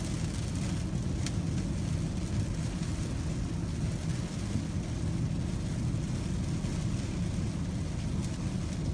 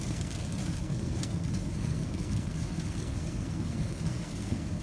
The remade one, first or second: second